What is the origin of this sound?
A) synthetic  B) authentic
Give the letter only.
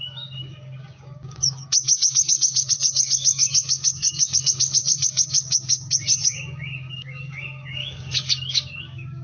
A